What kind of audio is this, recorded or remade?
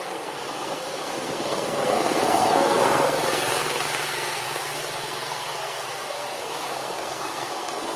remade